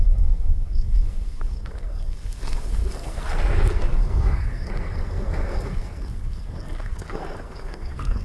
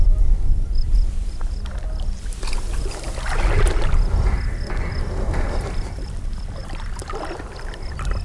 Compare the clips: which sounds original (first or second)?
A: second